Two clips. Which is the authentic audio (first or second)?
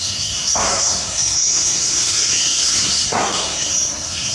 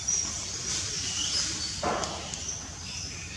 second